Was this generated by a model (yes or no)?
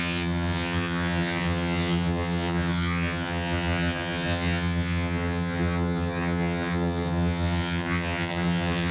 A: yes